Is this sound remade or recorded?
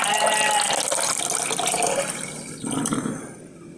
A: recorded